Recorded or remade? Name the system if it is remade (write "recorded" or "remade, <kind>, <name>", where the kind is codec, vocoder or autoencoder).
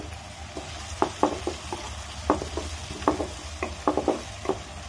recorded